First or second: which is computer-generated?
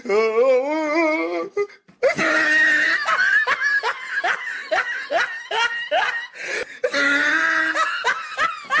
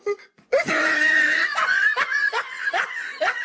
second